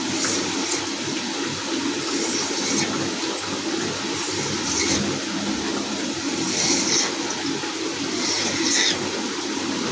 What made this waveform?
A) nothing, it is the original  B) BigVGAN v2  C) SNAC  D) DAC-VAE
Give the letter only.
A